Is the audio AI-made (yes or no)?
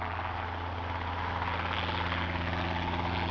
no